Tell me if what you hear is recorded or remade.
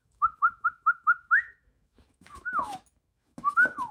remade